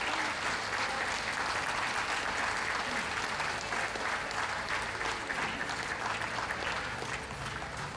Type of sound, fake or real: real